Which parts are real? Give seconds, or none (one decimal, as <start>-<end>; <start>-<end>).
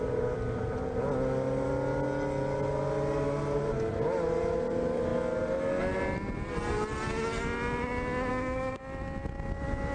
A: 0.0-8.3; 8.8-9.9